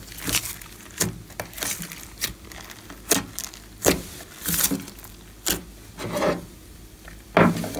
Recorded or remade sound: recorded